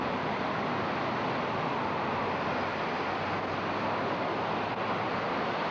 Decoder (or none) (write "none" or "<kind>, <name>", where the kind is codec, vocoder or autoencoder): none